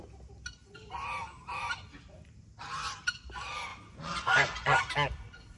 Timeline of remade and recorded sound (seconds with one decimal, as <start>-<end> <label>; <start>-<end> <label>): 0.0-3.7 recorded; 3.7-4.8 remade; 4.8-5.6 recorded